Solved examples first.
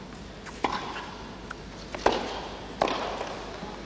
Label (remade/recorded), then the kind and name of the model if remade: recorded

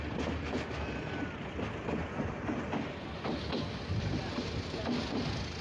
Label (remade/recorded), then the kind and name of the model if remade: recorded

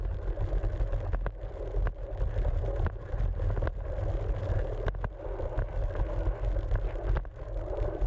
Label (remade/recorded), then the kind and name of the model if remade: recorded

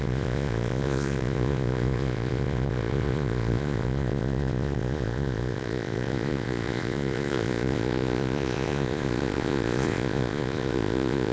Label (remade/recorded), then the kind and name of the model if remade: remade, vocoder, Vocos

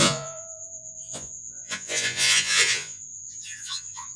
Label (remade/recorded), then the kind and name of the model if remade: remade, vocoder, Vocos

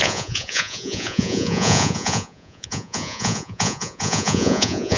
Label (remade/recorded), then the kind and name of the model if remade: remade, vocoder, Vocos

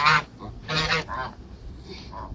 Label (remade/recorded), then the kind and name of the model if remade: recorded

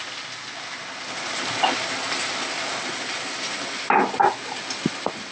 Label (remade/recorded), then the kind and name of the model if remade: recorded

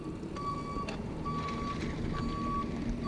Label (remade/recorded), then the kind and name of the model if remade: recorded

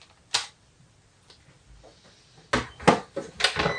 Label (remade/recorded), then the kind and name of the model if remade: recorded